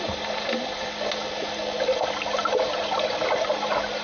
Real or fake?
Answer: real